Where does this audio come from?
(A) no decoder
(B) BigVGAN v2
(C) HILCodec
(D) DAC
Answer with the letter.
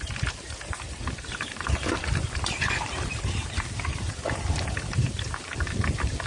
B